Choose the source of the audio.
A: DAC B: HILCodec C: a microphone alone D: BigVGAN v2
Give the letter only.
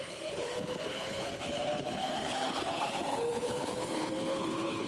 B